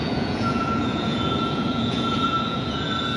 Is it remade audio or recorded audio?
remade